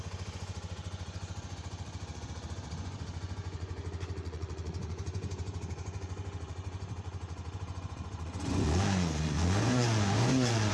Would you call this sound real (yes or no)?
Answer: no